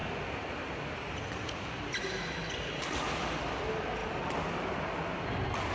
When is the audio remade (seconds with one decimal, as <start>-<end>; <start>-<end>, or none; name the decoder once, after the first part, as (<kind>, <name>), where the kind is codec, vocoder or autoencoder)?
none